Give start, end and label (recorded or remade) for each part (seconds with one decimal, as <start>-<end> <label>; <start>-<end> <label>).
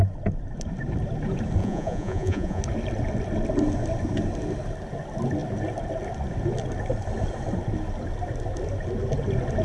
0.0-1.6 recorded; 1.6-2.6 remade; 2.6-9.6 recorded